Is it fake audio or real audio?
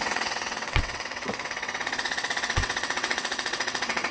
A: fake